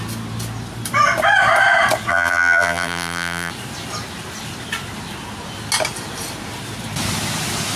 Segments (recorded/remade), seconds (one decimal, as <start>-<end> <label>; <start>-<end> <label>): 0.0-2.1 recorded; 2.1-3.5 remade; 3.5-7.8 recorded